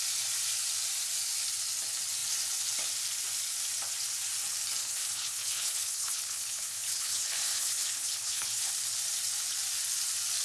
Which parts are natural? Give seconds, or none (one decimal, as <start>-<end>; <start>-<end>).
0.0-4.8; 8.7-10.4